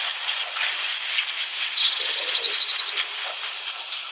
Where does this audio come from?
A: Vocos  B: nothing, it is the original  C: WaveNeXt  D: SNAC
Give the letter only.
B